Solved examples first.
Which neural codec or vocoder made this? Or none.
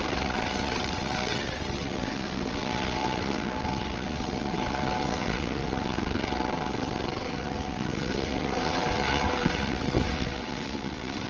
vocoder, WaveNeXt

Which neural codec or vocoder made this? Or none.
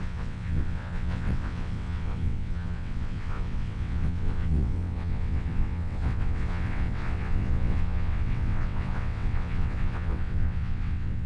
vocoder, WaveNeXt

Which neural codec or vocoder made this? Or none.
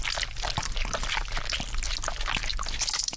none